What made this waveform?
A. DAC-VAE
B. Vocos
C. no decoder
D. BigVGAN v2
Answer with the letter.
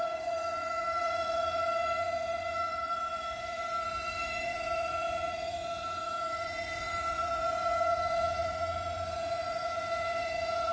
B